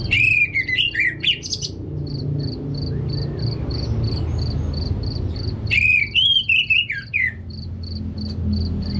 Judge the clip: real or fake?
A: real